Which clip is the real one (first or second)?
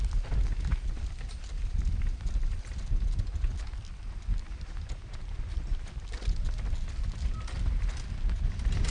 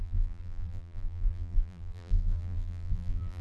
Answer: first